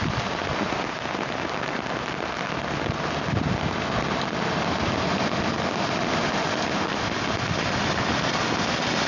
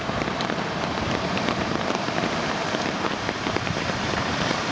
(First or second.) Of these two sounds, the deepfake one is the second